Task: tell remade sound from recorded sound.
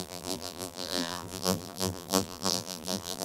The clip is remade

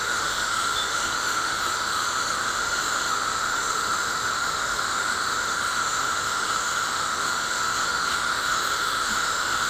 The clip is remade